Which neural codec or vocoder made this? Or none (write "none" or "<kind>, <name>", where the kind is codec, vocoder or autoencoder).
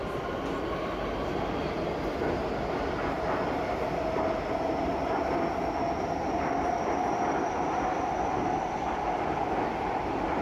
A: none